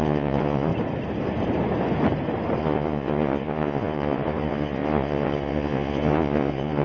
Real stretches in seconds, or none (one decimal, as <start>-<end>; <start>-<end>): 0.7-2.6